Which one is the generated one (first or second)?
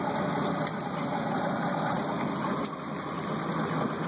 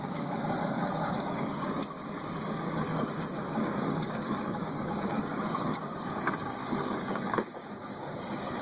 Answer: second